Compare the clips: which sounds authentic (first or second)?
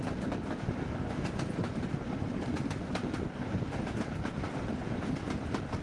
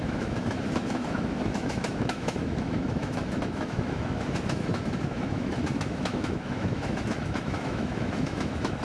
first